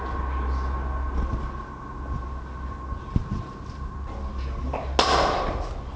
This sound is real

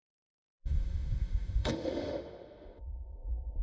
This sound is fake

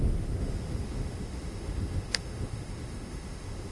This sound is fake